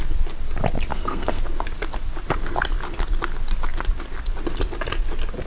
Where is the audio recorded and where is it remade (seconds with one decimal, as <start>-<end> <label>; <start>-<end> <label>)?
0.0-0.9 recorded; 0.9-1.4 remade; 1.4-5.5 recorded